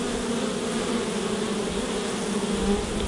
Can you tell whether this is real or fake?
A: real